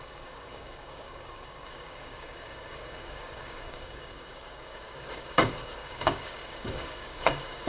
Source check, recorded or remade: remade